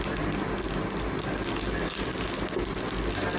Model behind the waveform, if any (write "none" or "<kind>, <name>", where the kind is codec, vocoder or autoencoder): none